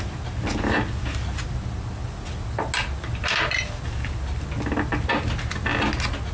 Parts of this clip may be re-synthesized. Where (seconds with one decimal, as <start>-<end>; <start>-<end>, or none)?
none